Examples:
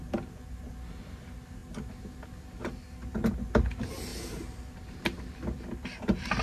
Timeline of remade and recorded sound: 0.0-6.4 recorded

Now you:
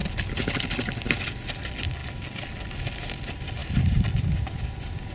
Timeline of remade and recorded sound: 0.0-3.6 recorded; 3.6-5.1 remade

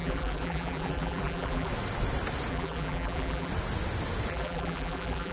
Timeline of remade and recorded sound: 0.0-1.7 remade; 1.7-2.5 recorded; 2.5-3.5 remade; 3.5-4.3 recorded; 4.3-5.3 remade

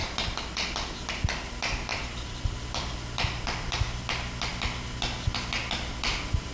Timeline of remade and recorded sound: 0.0-0.5 remade; 0.5-1.9 recorded; 1.9-4.0 remade; 4.0-6.5 recorded

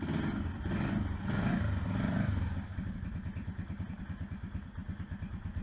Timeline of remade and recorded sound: 0.0-2.7 recorded; 2.7-4.0 remade; 4.0-5.6 recorded

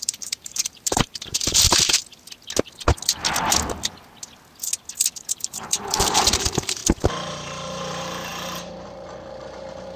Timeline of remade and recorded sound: 0.0-2.0 remade; 2.0-5.3 recorded; 5.3-6.8 remade; 6.8-7.3 recorded; 7.3-10.0 remade